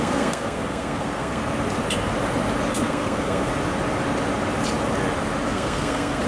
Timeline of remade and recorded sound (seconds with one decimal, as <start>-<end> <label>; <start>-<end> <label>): 0.0-1.4 remade; 1.4-2.7 recorded; 2.7-3.5 remade; 3.5-5.5 recorded; 5.5-6.3 remade